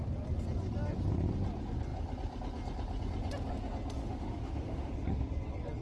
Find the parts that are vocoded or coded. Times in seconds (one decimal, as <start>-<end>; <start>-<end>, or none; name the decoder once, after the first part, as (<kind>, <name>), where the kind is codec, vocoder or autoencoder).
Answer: 4.0-4.9 (autoencoder, DAC-VAE)